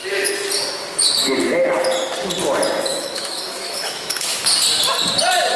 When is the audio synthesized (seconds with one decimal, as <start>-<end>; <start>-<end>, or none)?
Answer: 2.9-4.4